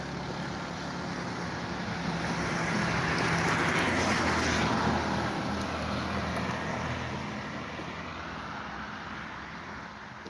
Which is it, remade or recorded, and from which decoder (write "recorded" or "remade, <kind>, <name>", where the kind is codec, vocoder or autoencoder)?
recorded